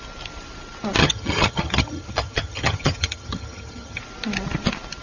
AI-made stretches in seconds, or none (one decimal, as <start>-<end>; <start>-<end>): 1.0-4.0